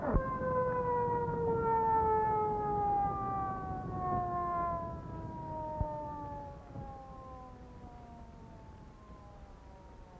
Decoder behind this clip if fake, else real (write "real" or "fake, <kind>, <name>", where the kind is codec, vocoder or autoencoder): real